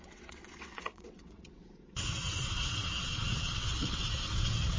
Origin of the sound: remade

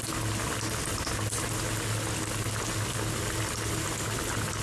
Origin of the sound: recorded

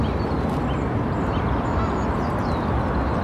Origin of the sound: recorded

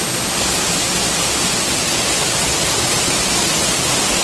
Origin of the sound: recorded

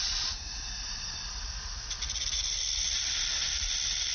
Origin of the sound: recorded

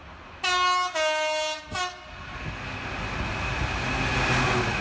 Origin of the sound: recorded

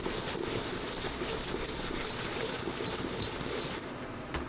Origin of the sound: recorded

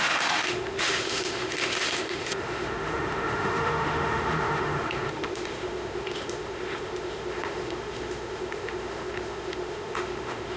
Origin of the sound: remade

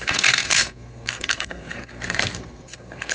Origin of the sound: remade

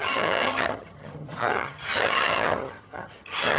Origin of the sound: remade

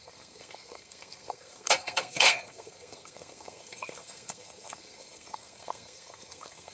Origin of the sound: remade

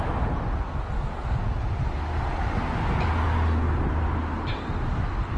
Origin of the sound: recorded